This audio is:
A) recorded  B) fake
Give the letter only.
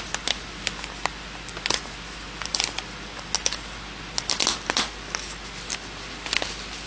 A